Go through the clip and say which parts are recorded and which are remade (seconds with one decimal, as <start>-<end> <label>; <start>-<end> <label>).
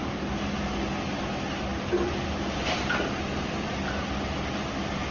0.0-5.1 recorded